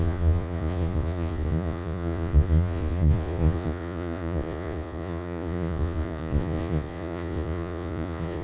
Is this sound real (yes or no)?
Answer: no